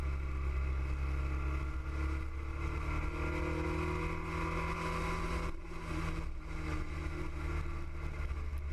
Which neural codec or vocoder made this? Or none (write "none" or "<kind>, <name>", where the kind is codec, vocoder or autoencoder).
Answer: none